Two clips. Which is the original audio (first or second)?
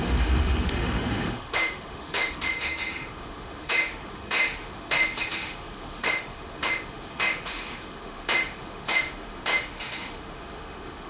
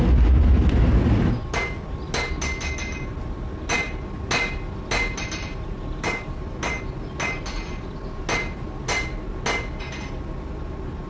second